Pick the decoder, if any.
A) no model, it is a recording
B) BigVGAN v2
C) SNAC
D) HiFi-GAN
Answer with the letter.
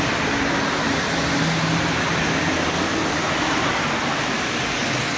B